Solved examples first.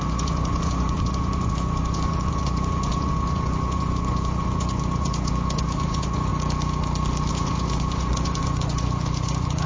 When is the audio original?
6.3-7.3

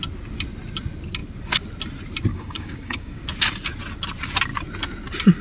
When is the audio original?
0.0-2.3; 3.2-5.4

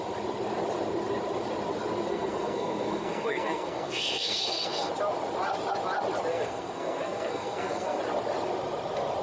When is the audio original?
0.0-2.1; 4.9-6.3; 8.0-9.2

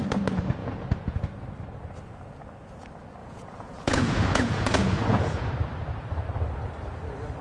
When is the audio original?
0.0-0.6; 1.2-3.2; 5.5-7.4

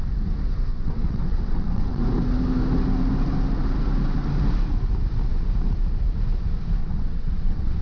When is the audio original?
0.0-0.7; 2.0-6.8

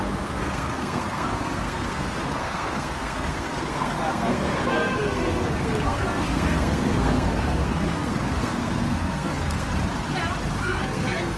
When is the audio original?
9.7-10.6

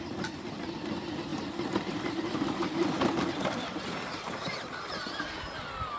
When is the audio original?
1.3-1.8